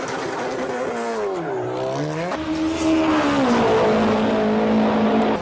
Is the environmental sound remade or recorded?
recorded